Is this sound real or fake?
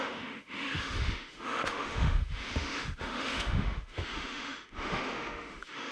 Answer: fake